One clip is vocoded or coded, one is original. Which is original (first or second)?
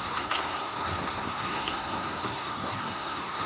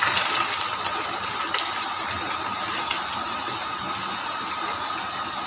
second